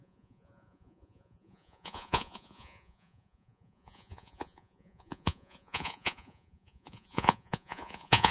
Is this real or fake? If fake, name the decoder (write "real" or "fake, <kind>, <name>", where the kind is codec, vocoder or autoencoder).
fake, vocoder, Vocos